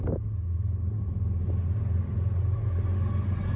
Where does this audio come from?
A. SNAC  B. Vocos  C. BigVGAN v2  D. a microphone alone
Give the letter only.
D